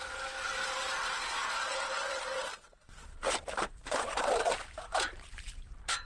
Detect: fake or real fake